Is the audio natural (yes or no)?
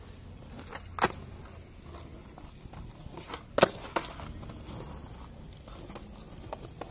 yes